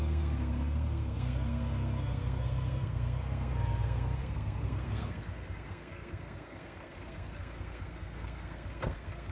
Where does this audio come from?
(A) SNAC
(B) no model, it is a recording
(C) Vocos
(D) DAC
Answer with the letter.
A